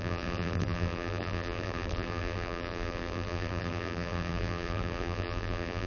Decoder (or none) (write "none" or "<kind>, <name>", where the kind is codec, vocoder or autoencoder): vocoder, BigVGAN v2